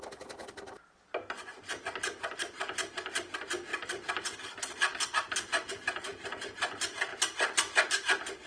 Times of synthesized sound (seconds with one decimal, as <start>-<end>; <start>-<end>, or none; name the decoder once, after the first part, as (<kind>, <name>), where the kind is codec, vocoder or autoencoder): 0.4-1.0 (vocoder, BigVGAN v2); 3.7-5.7